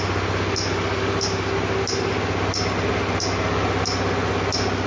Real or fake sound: real